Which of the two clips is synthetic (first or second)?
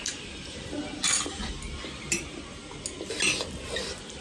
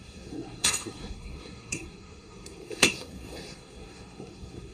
second